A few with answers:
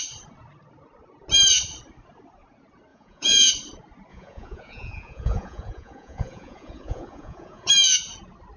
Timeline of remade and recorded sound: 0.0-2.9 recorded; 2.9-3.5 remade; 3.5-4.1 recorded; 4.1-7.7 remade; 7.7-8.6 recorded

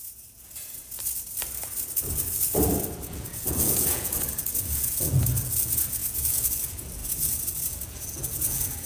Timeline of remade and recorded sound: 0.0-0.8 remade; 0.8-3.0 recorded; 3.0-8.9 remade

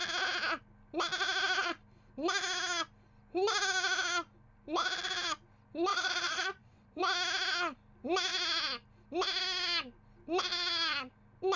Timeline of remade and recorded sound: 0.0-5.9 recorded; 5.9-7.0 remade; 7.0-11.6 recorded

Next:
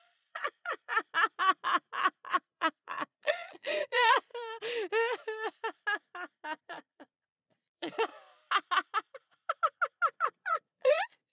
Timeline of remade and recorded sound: 0.0-0.9 remade; 0.9-2.3 recorded; 2.3-4.3 remade; 4.3-6.6 recorded; 6.6-8.1 remade; 8.1-10.2 recorded; 10.2-11.3 remade

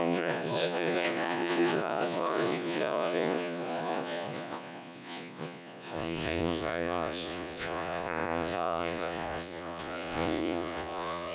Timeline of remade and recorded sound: 0.0-11.3 remade